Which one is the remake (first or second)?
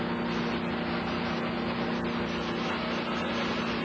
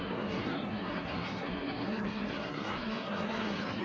second